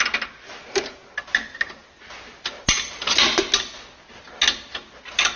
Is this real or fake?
real